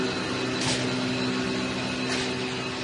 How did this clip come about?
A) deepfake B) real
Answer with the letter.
B